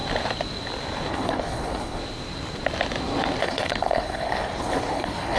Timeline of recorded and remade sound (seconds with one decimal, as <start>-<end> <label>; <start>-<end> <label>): 0.0-1.1 recorded; 1.1-2.0 remade; 2.0-3.4 recorded; 3.4-5.4 remade